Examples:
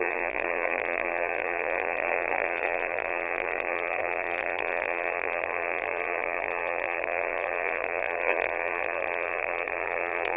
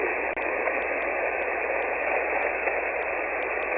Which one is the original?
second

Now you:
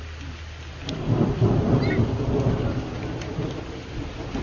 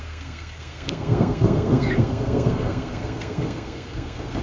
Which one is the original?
first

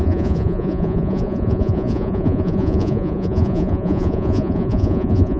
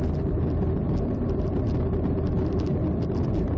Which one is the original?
second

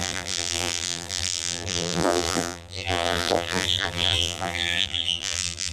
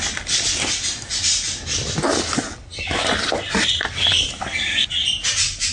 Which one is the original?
second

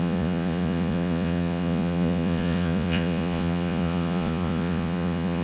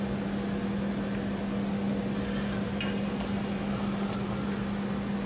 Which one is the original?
second